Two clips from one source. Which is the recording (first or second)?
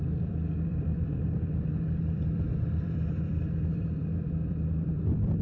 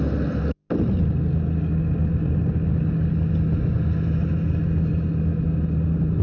second